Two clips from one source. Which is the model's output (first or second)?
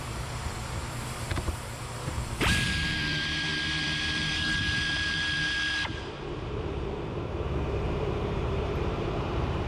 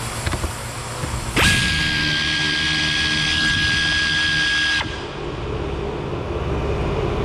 first